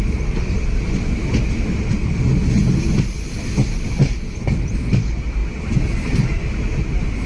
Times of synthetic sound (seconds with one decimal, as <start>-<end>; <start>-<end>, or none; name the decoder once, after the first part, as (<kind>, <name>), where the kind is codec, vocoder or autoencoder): none